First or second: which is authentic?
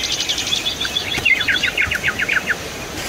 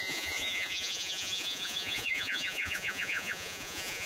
first